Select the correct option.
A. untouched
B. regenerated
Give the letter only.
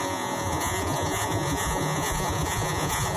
B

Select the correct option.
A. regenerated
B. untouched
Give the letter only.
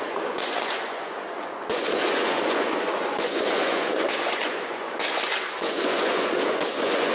A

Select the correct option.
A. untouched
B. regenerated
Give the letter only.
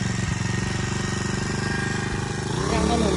A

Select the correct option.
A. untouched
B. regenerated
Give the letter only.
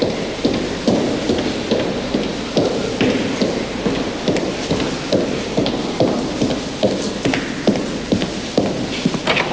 A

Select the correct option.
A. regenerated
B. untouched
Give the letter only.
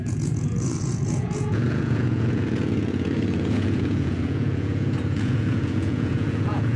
A